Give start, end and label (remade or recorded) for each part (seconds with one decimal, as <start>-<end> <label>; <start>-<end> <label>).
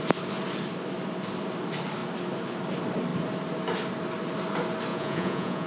0.0-4.9 recorded; 4.9-5.7 remade